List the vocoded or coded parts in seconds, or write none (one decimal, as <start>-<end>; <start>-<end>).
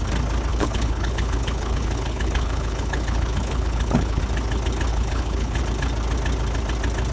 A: 0.5-4.2; 4.9-5.6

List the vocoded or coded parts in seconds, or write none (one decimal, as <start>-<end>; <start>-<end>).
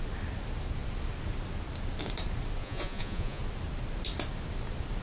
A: 2.6-3.4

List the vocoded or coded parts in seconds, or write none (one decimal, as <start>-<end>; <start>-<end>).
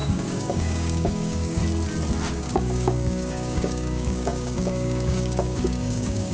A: 0.0-1.6; 2.3-6.3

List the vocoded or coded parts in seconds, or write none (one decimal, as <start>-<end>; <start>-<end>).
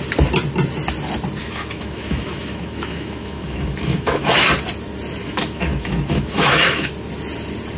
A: 1.4-4.3; 5.2-6.9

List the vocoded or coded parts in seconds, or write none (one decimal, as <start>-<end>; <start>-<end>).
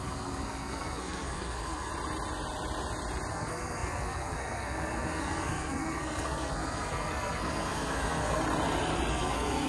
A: 0.0-1.9; 3.3-8.4; 9.1-9.7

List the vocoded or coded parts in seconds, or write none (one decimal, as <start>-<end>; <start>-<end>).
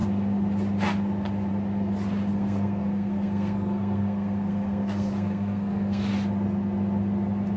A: 2.3-6.1